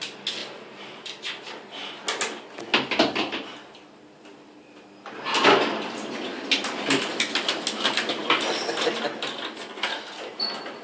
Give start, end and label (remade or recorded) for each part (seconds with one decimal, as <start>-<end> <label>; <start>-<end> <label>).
0.0-10.8 recorded